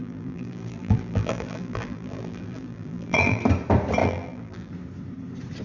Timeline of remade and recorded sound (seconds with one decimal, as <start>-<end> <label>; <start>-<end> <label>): 0.0-3.4 remade; 3.4-4.0 recorded; 4.0-4.7 remade; 4.7-5.6 recorded